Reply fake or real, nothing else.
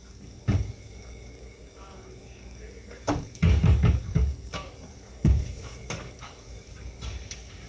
fake